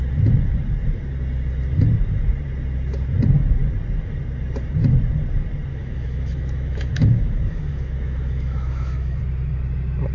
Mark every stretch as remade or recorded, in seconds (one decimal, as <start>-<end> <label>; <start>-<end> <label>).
0.0-5.7 recorded; 5.7-9.2 remade; 9.2-10.1 recorded